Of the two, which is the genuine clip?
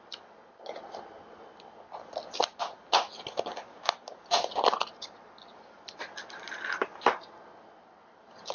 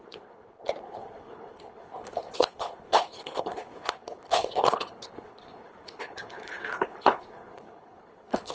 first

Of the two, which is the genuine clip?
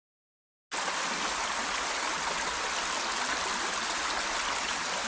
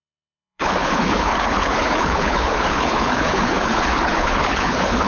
first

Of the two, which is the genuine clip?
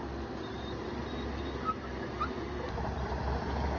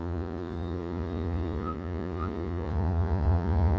first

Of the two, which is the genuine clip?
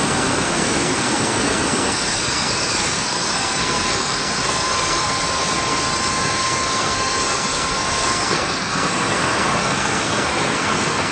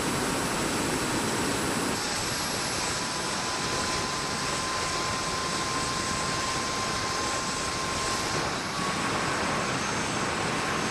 second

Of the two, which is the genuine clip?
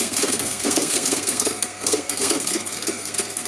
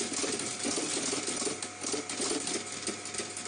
second